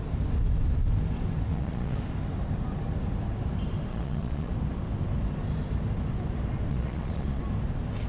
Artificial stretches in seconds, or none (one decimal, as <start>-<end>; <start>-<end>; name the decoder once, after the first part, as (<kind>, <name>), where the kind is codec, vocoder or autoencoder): 1.5-2.0 (vocoder, Vocos); 3.9-4.5; 6.7-7.4